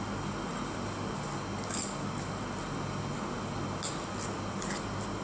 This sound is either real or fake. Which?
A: real